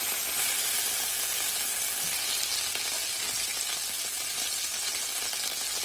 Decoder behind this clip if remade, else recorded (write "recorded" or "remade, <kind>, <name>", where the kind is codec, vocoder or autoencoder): recorded